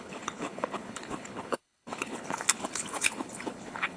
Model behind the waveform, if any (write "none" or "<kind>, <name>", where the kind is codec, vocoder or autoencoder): codec, HILCodec